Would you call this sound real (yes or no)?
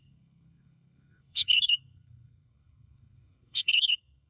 no